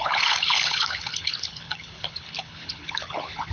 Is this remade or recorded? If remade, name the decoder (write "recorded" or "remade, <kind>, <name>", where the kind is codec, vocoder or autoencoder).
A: remade, codec, HILCodec